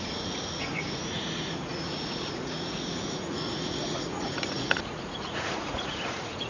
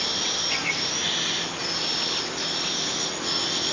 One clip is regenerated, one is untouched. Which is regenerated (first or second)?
first